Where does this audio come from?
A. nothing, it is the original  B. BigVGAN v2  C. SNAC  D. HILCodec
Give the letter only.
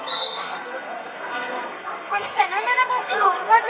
C